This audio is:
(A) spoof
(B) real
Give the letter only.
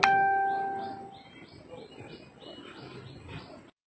B